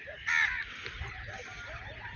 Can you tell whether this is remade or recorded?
recorded